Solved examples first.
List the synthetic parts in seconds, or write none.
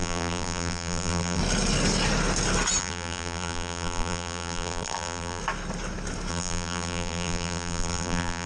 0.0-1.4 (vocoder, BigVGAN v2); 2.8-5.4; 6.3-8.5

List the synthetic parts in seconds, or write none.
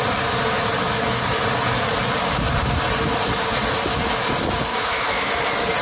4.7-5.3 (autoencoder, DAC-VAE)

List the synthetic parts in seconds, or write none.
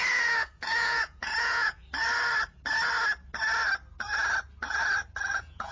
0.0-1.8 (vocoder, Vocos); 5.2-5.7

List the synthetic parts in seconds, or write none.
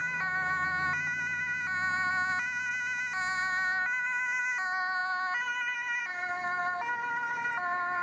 none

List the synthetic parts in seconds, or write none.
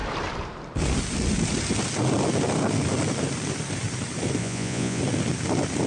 4.4-5.0 (vocoder, Vocos)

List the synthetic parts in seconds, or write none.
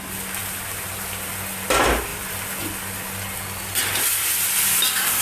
none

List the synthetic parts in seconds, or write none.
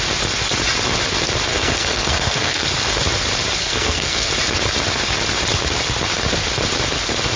1.5-2.7 (codec, SNAC); 3.6-4.3